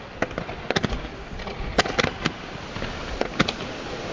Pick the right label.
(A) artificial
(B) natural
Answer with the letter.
B